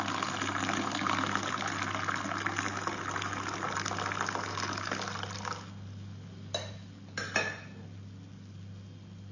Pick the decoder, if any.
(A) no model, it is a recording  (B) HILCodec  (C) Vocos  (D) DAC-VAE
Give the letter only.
A